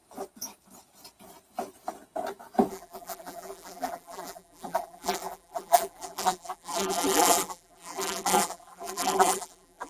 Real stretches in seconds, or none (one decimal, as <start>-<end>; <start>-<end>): 0.0-2.7